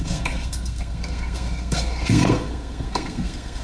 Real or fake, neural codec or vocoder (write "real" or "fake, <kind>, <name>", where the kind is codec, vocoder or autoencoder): fake, codec, SNAC